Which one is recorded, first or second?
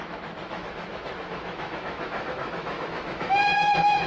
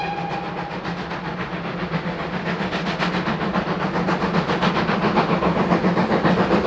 second